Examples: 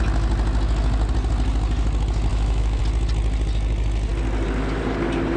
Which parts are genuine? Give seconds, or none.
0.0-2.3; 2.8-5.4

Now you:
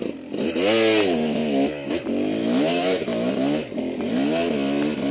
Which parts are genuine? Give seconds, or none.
0.0-1.4; 2.0-2.4; 3.3-5.1

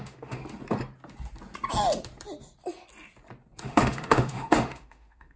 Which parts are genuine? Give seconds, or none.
0.4-3.6